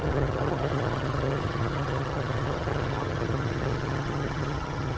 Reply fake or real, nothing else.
fake